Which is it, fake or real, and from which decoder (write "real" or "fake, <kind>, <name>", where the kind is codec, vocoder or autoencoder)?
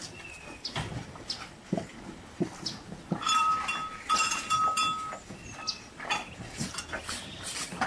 real